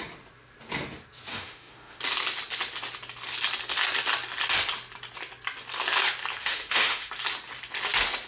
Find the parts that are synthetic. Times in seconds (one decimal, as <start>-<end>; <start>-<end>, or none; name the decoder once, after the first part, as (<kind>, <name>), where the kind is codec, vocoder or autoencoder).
1.3-2.0 (autoencoder, DAC-VAE); 6.4-7.1

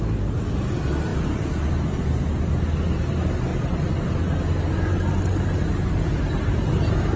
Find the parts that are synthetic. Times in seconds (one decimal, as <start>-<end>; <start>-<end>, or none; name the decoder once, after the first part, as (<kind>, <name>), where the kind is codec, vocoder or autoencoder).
1.1-1.7 (vocoder, BigVGAN v2)

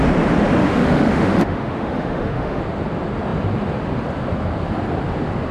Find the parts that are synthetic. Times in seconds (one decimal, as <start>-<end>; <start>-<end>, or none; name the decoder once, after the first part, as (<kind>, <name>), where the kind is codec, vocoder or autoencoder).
0.6-2.6 (autoencoder, DAC-VAE)

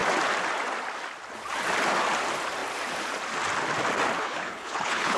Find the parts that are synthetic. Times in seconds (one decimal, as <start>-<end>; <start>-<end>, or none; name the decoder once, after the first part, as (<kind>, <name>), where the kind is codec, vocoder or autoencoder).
4.2-5.2 (codec, HILCodec)

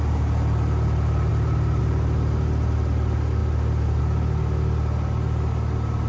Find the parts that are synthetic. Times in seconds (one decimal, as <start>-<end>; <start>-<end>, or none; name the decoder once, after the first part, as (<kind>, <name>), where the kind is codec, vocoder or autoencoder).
1.3-1.8 (vocoder, BigVGAN v2)

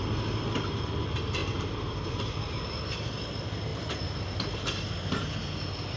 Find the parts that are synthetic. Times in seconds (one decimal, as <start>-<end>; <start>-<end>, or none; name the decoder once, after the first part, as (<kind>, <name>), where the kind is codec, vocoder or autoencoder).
1.4-2.6 (vocoder, BigVGAN v2)

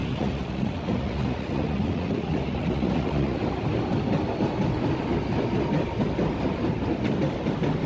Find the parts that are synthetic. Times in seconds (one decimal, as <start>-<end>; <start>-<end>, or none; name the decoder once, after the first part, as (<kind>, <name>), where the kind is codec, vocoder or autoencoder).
0.0-3.4 (vocoder, Vocos)